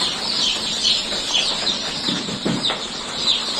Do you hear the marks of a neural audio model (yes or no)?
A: yes